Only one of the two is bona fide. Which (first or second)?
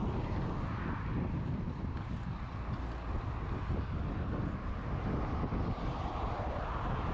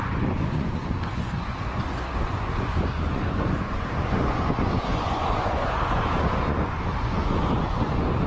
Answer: first